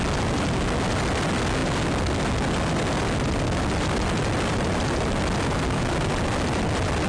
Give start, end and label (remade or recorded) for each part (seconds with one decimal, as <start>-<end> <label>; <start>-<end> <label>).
0.0-7.1 recorded